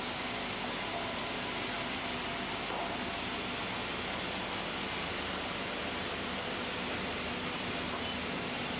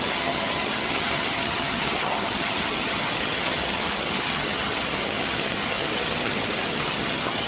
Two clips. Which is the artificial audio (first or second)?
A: second